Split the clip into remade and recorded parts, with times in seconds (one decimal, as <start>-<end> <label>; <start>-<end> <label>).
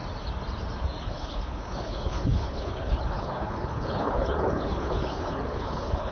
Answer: 0.0-1.0 recorded; 1.0-6.1 remade